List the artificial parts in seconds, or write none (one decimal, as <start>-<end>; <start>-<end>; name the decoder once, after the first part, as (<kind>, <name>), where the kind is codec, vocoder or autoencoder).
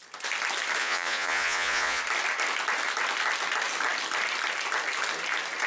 0.8-2.0 (vocoder, Vocos)